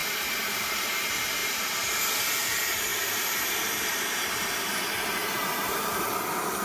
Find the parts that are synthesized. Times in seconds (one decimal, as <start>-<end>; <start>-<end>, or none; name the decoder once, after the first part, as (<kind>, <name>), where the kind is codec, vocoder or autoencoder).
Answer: 0.0-1.0 (vocoder, BigVGAN v2); 1.4-2.2; 2.9-4.7; 5.2-6.1